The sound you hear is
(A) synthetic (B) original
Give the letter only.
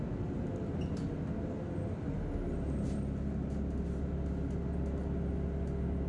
B